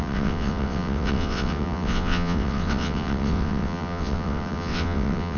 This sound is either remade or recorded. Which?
remade